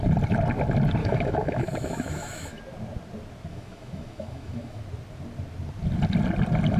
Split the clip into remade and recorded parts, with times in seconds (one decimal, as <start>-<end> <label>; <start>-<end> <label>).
0.0-1.0 recorded; 1.0-2.6 remade; 2.6-3.5 recorded; 3.5-4.8 remade; 4.8-6.8 recorded